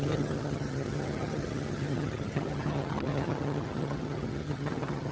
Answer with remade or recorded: remade